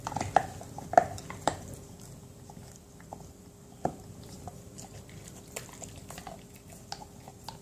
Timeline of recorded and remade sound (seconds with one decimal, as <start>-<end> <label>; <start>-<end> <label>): 0.0-7.6 recorded